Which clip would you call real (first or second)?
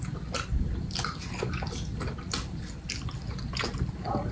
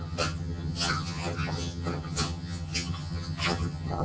first